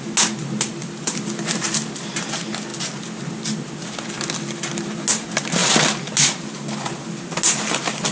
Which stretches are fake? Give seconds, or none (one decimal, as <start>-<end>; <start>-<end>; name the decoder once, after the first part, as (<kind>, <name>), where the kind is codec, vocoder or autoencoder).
0.7-2.1 (vocoder, BigVGAN v2)